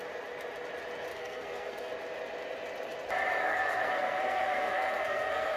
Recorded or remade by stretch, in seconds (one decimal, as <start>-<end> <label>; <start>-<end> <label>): 0.0-1.1 recorded; 1.1-1.9 remade; 1.9-3.4 recorded; 3.4-5.6 remade

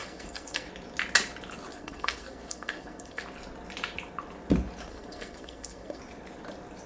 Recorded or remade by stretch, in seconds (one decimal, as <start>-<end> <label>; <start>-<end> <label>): 0.0-0.7 remade; 0.7-1.7 recorded; 1.7-3.2 remade; 3.2-4.9 recorded; 4.9-6.0 remade; 6.0-6.9 recorded

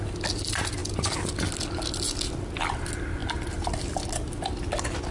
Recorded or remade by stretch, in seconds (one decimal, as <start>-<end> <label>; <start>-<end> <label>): 0.0-5.1 recorded